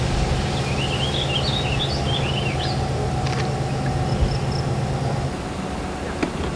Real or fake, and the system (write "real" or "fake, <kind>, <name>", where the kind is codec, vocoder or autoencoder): real